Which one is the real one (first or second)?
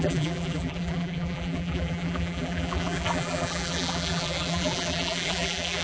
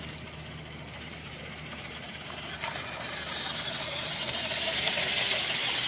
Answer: second